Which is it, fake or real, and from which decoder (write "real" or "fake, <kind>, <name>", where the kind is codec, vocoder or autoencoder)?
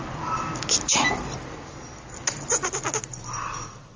real